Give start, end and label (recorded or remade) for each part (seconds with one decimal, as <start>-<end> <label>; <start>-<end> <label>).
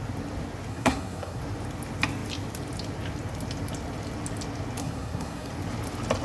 0.0-0.7 recorded; 0.7-1.4 remade; 1.4-4.8 recorded; 4.8-5.5 remade; 5.5-6.2 recorded